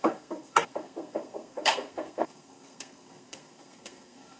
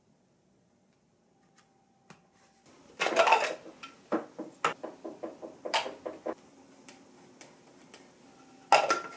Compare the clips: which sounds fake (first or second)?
first